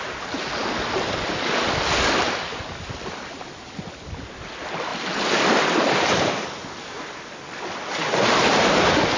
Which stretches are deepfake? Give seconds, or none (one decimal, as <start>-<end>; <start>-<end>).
none